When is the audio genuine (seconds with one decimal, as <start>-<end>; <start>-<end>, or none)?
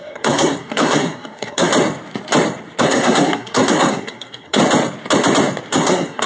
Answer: 1.7-2.8; 4.6-5.7